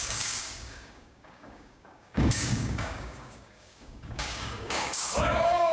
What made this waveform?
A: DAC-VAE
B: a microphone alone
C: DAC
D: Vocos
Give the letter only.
C